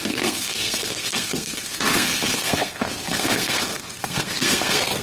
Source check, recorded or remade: remade